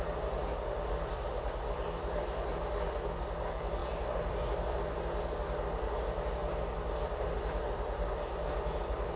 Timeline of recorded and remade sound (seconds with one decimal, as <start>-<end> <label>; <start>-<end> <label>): 0.0-9.2 recorded

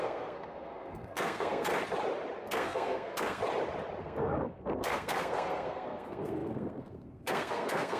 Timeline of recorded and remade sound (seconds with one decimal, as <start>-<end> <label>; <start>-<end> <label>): 0.0-1.7 remade; 1.7-2.4 recorded; 2.4-3.4 remade; 3.4-4.0 recorded; 4.0-8.0 remade

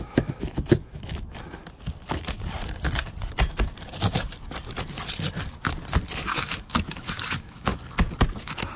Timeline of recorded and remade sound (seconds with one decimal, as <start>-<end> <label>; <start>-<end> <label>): 0.0-1.6 remade; 1.6-6.3 recorded; 6.3-7.7 remade; 7.7-8.4 recorded; 8.4-8.8 remade

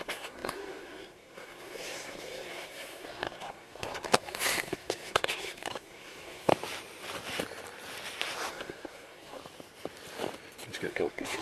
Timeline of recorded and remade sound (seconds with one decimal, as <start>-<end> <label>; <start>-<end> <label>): 0.0-6.5 remade; 6.5-8.5 recorded; 8.5-9.4 remade; 9.4-10.9 recorded; 10.9-11.4 remade

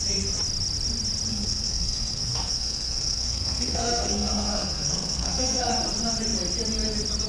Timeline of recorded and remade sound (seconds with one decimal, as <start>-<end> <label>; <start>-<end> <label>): 0.0-1.3 recorded; 1.3-5.7 remade; 5.7-7.3 recorded